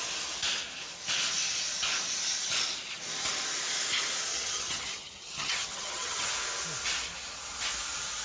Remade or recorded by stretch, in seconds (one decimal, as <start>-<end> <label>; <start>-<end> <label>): 0.0-4.3 recorded; 4.3-6.3 remade; 6.3-8.2 recorded